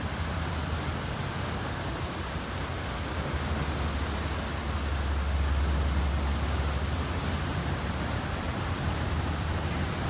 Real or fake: real